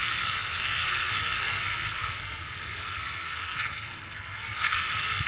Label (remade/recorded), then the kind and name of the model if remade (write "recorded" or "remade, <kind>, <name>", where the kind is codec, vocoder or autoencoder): remade, codec, SNAC